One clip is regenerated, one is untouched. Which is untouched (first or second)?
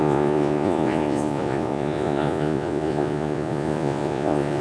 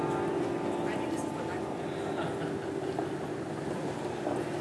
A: second